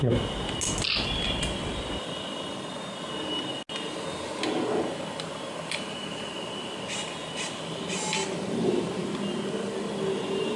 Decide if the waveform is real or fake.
real